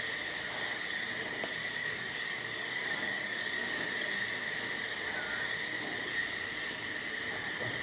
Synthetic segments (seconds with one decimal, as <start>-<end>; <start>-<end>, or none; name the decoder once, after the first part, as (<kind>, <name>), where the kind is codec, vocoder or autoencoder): 1.6-3.9 (codec, DAC)